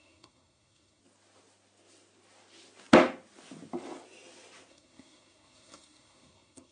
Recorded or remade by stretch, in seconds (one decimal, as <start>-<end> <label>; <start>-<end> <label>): 0.0-1.0 remade; 1.0-4.7 recorded; 4.7-6.7 remade